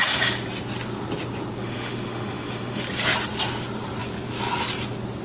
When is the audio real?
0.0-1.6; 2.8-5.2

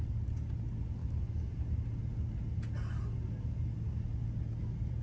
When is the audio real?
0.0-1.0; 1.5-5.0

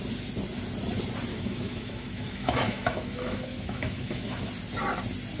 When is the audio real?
0.0-1.3; 4.5-5.4

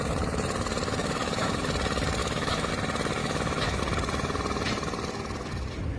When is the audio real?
0.0-1.0; 1.6-2.2; 2.7-3.2; 3.8-6.0

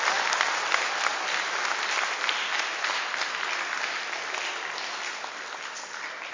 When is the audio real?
0.0-6.3